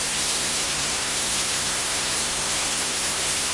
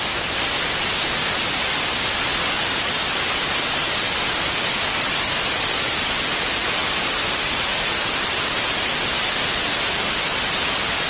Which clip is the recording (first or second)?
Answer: second